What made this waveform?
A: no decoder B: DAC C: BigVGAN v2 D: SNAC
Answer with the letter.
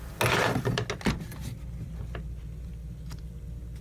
A